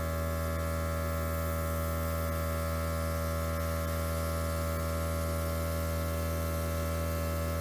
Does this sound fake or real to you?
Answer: real